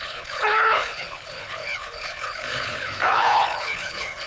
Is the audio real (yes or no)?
no